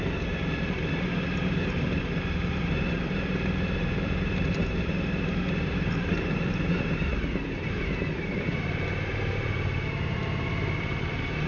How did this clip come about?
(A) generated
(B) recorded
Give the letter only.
A